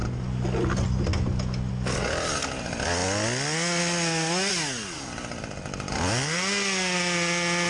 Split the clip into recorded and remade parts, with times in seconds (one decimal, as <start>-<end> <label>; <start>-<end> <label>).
0.0-7.7 recorded